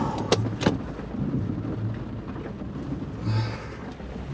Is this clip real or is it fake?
real